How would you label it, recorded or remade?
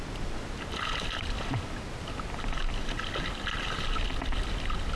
recorded